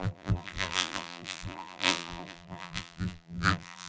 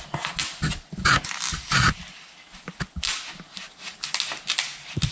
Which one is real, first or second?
second